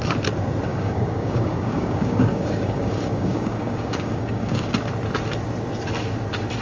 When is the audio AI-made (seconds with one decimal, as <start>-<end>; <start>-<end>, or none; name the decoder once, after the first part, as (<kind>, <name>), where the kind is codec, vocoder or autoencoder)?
0.7-4.7 (codec, DAC)